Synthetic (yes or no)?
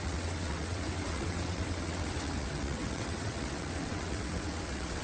yes